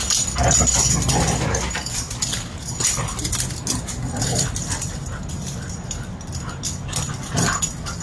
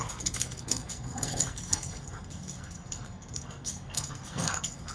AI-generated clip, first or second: second